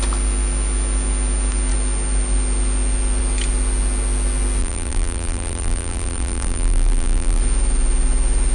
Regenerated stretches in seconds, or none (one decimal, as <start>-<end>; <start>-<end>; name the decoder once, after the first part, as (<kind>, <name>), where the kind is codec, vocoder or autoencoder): 4.6-7.4 (vocoder, BigVGAN v2)